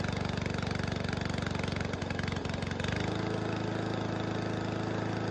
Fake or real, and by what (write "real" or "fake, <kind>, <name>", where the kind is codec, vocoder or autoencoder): real